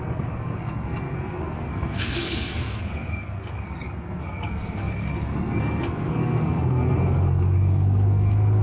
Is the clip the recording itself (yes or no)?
no